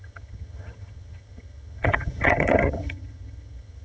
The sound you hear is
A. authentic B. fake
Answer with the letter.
B